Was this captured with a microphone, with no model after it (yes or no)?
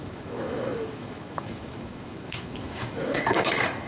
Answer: no